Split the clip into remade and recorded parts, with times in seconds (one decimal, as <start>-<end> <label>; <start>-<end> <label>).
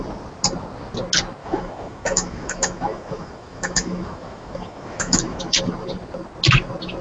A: 0.0-1.4 recorded; 1.4-5.6 remade; 5.6-7.0 recorded